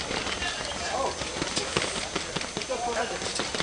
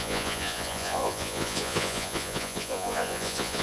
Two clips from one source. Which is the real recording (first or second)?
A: first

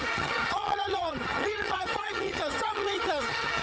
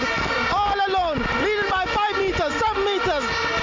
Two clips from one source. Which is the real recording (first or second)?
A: second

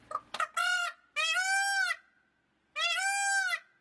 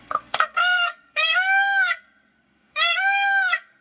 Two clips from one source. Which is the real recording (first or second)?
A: first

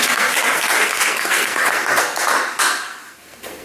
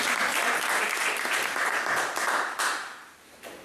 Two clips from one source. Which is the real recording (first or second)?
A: second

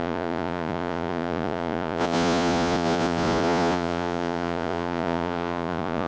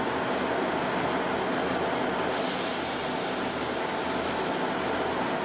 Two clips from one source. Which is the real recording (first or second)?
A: second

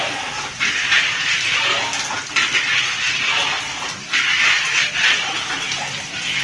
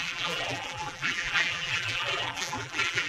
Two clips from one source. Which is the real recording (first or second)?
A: first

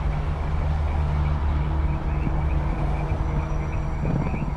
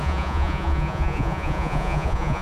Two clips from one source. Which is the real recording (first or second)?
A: first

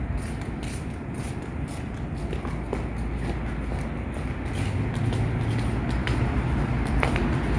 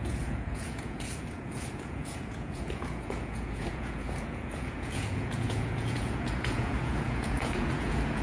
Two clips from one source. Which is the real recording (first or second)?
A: first